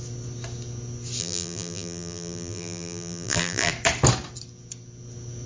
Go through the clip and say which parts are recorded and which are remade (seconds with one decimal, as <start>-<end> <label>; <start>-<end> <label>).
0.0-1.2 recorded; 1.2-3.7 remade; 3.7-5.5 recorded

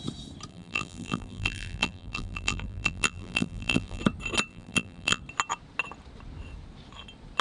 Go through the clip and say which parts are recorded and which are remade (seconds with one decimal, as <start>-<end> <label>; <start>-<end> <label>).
0.0-0.5 recorded; 0.5-4.0 remade; 4.0-4.5 recorded; 4.5-5.2 remade; 5.2-7.4 recorded

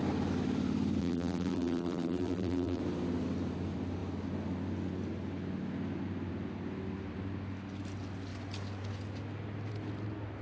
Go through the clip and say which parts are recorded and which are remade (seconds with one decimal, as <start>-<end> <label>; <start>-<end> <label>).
0.0-1.0 recorded; 1.0-2.8 remade; 2.8-10.4 recorded

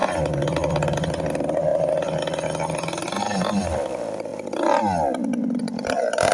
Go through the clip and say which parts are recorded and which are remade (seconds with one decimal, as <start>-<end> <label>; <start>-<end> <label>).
0.0-1.7 remade; 1.7-3.2 recorded; 3.2-4.3 remade; 4.3-5.6 recorded; 5.6-6.3 remade

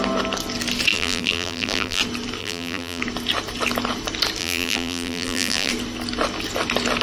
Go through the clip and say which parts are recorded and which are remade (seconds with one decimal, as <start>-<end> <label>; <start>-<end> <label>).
0.0-0.9 recorded; 0.9-2.0 remade; 2.0-2.4 recorded; 2.4-3.0 remade; 3.0-4.4 recorded; 4.4-5.7 remade; 5.7-7.0 recorded